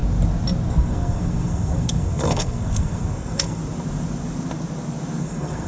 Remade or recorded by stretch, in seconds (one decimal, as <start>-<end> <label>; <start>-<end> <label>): 0.0-0.7 recorded; 0.7-3.6 remade; 3.6-5.2 recorded; 5.2-5.7 remade